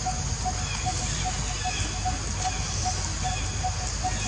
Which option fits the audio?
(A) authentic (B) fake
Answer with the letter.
A